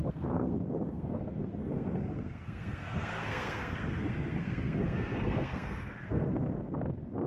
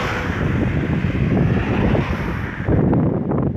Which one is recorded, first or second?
second